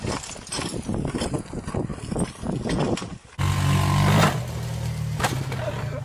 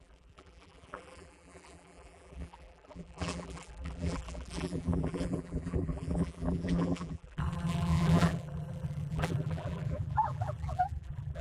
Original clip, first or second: first